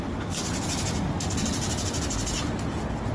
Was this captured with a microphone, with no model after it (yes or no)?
yes